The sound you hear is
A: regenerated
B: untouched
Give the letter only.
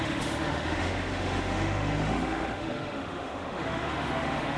A